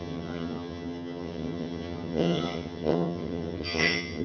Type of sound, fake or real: fake